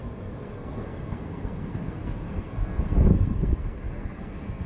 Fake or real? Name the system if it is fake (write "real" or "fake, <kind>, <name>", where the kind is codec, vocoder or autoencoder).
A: fake, codec, SNAC